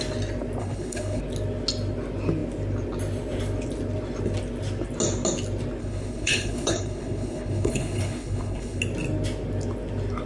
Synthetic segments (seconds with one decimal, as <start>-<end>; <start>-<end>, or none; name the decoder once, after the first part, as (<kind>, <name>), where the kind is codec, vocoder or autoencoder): 0.6-1.2 (codec, HILCodec); 5.8-8.8